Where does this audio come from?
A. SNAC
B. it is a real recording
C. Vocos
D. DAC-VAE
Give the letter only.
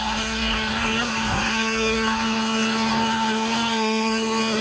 A